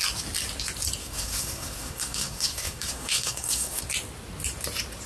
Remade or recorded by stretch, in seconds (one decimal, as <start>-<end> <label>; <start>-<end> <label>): 0.0-1.0 recorded; 1.0-3.8 remade; 3.8-5.1 recorded